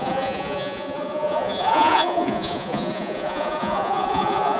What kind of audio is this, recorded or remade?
remade